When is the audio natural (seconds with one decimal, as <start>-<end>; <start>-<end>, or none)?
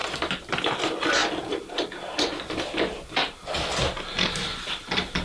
0.0-5.2